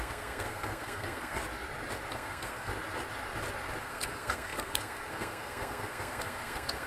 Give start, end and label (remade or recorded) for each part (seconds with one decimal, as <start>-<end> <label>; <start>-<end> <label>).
0.0-1.4 remade; 1.4-2.1 recorded; 2.1-2.7 remade; 2.7-3.8 recorded; 3.8-6.9 remade